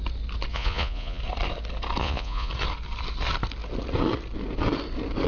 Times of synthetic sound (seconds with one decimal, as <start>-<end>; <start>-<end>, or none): 0.5-1.2; 2.0-2.5

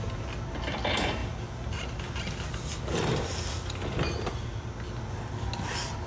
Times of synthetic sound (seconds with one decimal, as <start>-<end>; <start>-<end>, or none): none

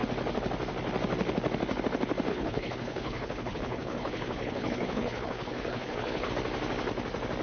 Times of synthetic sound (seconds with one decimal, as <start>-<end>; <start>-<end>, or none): 2.3-6.3

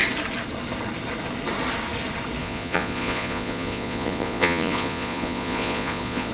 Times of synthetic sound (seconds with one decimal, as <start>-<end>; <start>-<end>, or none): 2.4-6.3

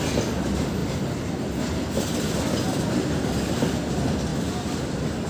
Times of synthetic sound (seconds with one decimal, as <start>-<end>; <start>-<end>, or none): none